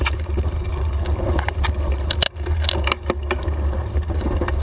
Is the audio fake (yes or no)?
no